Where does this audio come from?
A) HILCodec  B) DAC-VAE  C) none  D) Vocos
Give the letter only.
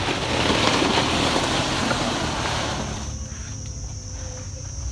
C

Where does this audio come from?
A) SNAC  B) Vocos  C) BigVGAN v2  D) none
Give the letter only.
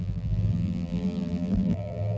C